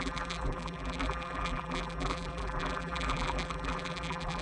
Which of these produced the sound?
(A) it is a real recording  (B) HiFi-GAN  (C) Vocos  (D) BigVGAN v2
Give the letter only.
D